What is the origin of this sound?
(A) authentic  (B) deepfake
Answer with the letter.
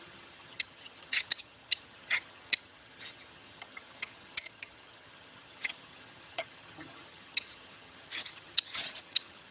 B